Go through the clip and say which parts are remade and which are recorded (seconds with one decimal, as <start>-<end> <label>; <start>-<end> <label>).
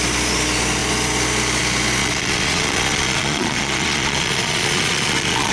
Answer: 0.0-2.0 recorded; 2.0-5.5 remade